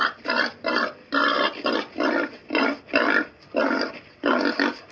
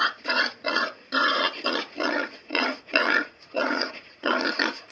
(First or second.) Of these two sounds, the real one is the first